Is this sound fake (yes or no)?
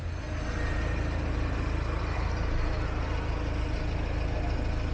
no